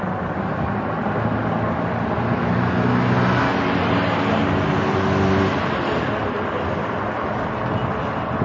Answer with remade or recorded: recorded